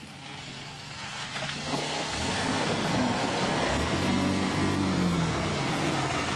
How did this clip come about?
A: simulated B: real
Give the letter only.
A